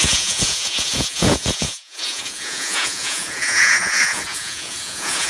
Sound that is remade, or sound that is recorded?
remade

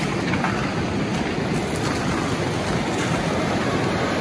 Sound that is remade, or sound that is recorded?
recorded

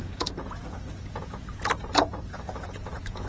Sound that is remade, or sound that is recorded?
remade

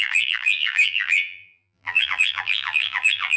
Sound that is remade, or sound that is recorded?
remade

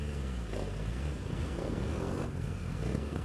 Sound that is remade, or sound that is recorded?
remade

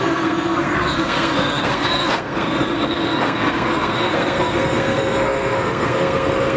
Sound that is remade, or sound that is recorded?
remade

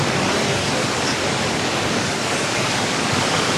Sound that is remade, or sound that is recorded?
remade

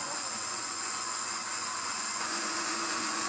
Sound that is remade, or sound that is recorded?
remade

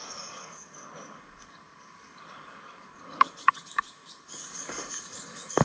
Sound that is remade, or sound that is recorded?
remade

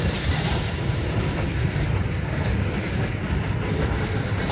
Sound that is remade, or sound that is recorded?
remade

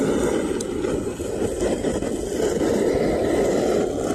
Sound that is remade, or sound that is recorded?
recorded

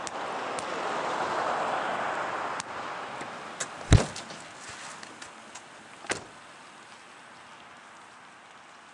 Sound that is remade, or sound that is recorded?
recorded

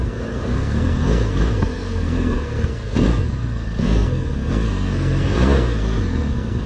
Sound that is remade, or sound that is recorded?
remade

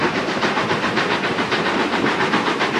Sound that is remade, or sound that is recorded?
remade